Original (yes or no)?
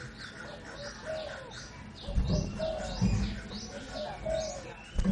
yes